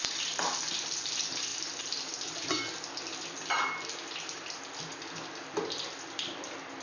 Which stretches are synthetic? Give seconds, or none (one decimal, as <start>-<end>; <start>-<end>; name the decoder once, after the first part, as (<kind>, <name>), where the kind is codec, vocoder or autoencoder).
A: none